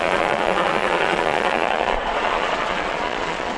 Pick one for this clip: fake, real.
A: fake